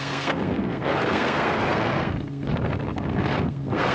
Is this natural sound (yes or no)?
no